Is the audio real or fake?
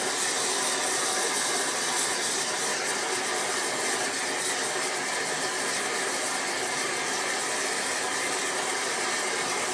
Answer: real